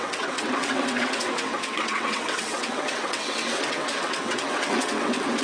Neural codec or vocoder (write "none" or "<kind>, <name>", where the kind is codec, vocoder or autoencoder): vocoder, WaveNeXt